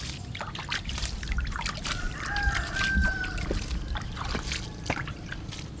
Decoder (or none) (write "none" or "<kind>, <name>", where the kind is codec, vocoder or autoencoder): none